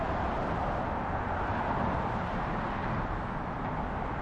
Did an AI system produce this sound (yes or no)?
no